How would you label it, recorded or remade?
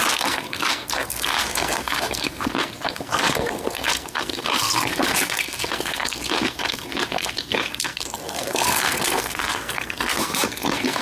remade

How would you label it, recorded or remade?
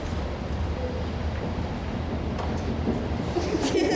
recorded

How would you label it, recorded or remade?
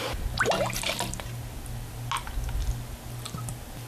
recorded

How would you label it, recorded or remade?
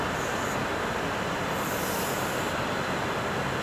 recorded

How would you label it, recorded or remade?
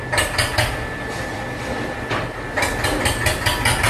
recorded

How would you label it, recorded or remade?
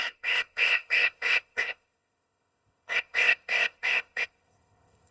remade